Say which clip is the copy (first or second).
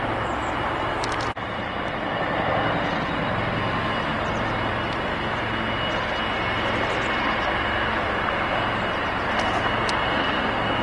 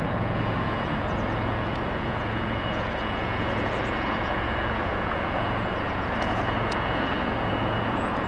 second